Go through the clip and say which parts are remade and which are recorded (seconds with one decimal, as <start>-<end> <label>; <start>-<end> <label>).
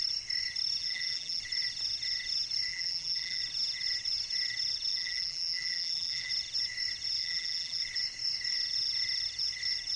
0.0-0.8 recorded; 0.8-1.4 remade; 1.4-2.7 recorded; 2.7-3.4 remade; 3.4-4.9 recorded; 4.9-6.3 remade; 6.3-7.2 recorded; 7.2-7.8 remade; 7.8-10.0 recorded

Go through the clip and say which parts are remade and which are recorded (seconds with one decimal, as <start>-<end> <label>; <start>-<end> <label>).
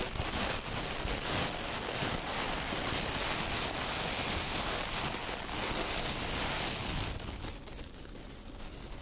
0.0-9.0 recorded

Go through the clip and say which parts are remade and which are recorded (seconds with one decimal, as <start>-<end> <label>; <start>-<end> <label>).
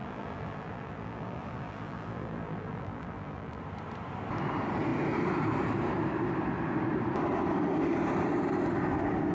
0.0-3.6 remade; 3.6-9.3 recorded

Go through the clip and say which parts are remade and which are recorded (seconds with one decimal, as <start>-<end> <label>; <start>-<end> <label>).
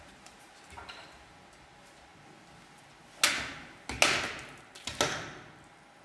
0.0-2.1 remade; 2.1-6.0 recorded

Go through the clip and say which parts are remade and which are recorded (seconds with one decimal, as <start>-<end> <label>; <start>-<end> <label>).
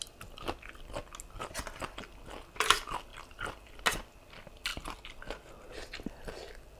0.0-3.1 recorded; 3.1-3.8 remade; 3.8-6.8 recorded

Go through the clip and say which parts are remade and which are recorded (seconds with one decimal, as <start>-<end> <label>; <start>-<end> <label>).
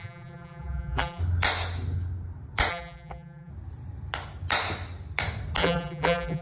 0.0-1.2 remade; 1.2-2.7 recorded; 2.7-3.5 remade; 3.5-5.6 recorded; 5.6-6.4 remade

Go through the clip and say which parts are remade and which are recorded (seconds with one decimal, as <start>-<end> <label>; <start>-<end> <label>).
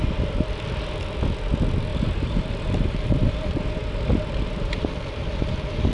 0.0-1.9 recorded; 1.9-3.7 remade; 3.7-5.9 recorded